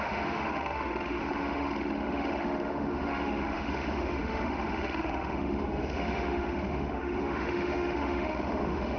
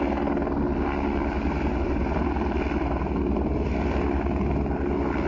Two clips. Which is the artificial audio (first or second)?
first